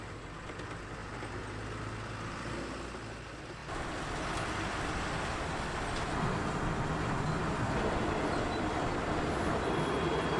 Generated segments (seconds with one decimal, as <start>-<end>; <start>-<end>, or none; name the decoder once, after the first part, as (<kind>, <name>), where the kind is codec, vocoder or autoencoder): none